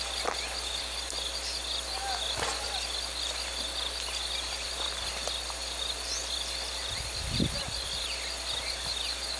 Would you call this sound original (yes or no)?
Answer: no